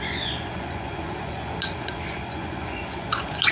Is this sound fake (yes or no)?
yes